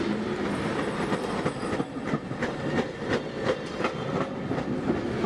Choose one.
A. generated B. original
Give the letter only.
B